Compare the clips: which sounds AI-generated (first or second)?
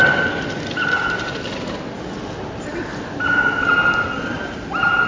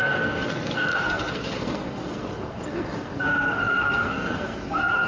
second